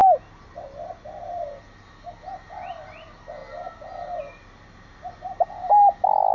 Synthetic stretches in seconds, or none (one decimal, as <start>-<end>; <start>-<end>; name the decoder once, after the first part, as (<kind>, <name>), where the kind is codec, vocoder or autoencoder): none